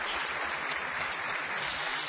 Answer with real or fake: real